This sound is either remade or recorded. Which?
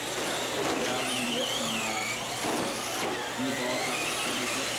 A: recorded